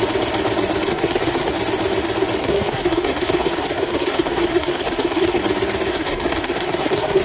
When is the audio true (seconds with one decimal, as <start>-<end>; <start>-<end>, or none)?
0.0-0.9; 1.5-2.4; 5.4-5.9